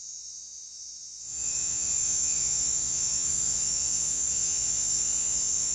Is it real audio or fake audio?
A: fake